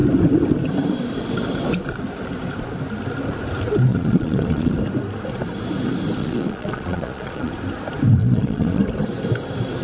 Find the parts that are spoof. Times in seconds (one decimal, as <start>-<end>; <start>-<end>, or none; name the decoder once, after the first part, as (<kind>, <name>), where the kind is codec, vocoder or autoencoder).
3.9-4.7 (vocoder, Vocos); 6.2-7.5; 8.2-8.8